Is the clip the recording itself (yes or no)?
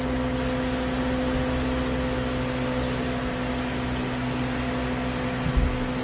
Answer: yes